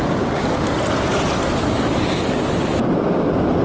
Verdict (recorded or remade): recorded